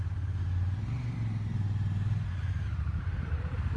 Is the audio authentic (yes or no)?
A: yes